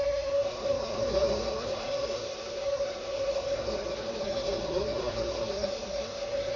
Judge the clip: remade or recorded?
remade